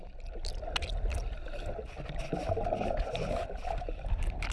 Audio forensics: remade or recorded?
recorded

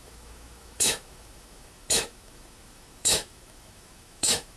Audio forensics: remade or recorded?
remade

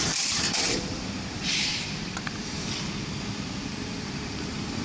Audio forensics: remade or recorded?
remade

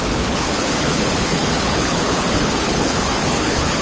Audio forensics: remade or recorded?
remade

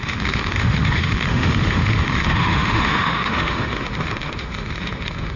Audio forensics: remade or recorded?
remade